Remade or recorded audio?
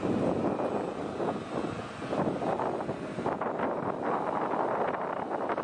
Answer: recorded